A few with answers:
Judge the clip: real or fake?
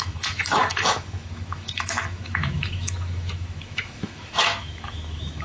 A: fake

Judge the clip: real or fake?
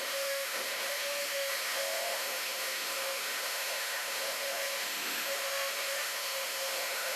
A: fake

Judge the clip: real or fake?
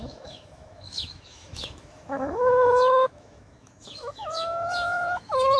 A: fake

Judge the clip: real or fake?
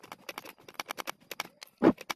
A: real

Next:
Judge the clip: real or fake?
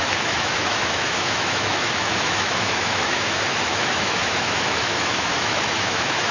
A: fake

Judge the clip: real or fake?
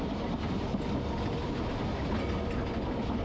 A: real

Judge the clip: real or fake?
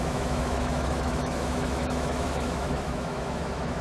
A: fake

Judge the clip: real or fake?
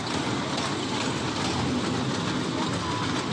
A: real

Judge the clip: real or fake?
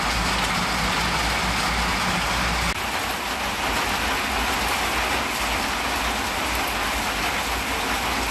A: real